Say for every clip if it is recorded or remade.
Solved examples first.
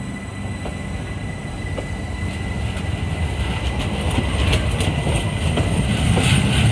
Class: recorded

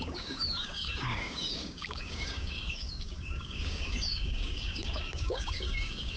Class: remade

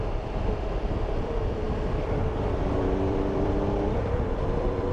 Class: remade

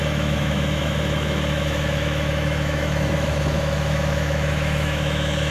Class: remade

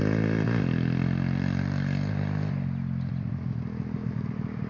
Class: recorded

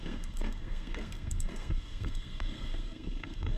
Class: remade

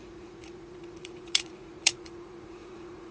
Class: remade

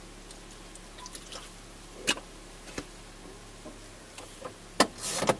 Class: recorded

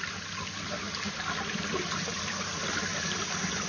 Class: recorded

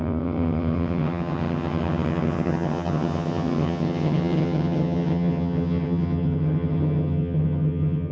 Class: remade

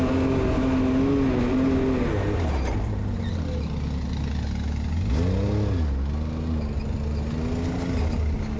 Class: recorded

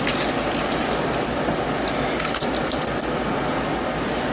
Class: recorded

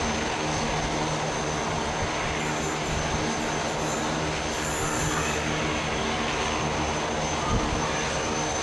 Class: recorded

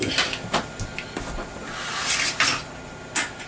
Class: recorded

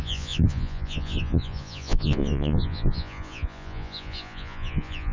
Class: remade